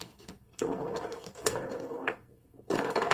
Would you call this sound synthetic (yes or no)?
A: yes